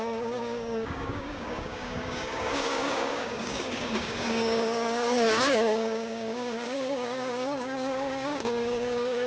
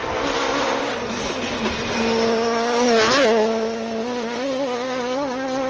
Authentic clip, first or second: second